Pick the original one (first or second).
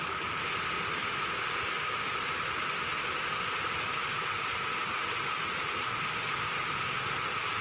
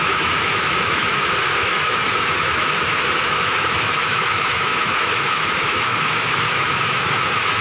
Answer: first